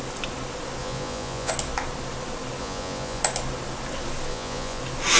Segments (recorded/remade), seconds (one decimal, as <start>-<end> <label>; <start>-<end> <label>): 0.0-0.8 recorded; 0.8-1.5 remade; 1.5-2.6 recorded; 2.6-3.2 remade; 3.2-4.3 recorded; 4.3-4.8 remade; 4.8-5.2 recorded